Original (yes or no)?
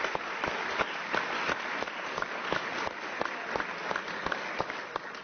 yes